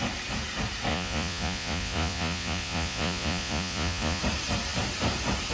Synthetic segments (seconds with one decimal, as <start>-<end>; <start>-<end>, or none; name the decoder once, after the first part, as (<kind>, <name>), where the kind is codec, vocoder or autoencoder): 0.9-4.2 (vocoder, Vocos)